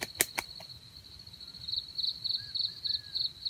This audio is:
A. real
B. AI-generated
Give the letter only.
A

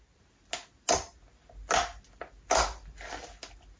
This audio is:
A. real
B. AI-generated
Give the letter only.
A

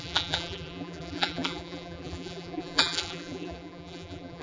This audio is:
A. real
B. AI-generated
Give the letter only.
B